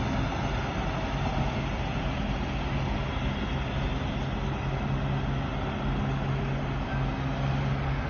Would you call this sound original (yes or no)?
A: yes